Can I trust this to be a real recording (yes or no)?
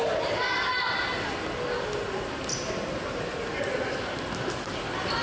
yes